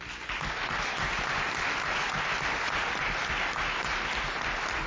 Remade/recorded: recorded